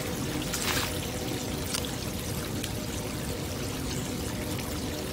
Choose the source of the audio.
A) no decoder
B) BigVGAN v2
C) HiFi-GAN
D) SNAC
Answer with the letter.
A